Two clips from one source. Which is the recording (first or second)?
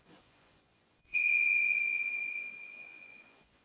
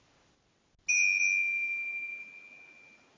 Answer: second